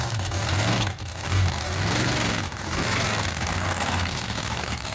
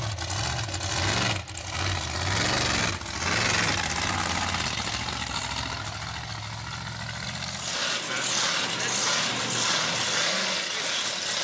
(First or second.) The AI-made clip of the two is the first